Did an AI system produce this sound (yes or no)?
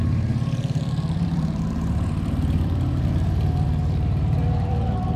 yes